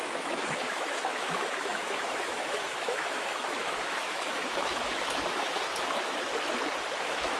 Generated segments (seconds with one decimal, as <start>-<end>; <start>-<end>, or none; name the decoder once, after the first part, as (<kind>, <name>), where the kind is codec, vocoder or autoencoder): 0.0-6.3 (autoencoder, DAC-VAE); 7.0-7.4

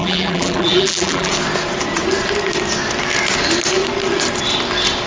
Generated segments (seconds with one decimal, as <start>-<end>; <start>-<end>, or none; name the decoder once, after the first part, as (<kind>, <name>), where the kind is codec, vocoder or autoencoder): 0.0-1.3 (vocoder, BigVGAN v2)

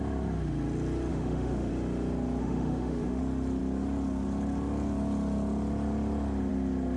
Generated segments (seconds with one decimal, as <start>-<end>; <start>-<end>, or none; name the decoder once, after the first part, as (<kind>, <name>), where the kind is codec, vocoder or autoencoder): 1.1-1.7 (autoencoder, DAC-VAE); 2.4-3.2

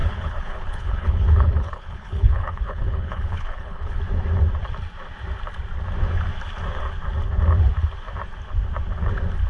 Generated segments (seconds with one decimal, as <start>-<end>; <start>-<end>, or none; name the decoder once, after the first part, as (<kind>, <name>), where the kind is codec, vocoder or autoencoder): 0.0-4.0 (codec, HILCodec)

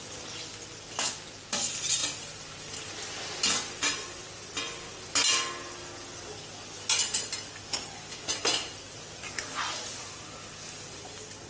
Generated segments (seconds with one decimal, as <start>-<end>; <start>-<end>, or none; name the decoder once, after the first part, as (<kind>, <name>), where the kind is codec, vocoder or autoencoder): none

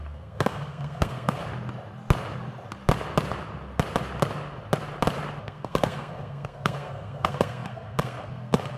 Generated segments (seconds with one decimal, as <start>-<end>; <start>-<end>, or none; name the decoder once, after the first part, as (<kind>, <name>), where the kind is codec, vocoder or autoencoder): 0.0-1.4 (codec, SNAC); 5.4-8.8

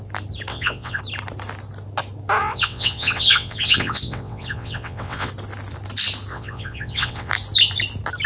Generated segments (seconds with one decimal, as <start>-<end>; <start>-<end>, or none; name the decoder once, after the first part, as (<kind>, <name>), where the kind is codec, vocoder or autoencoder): 0.5-1.0 (vocoder, WaveNeXt); 2.4-5.3; 6.3-7.3

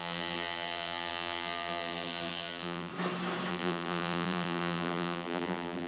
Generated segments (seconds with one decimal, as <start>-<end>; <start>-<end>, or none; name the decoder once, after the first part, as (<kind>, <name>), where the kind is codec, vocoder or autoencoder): 0.0-2.9 (vocoder, BigVGAN v2); 3.5-5.9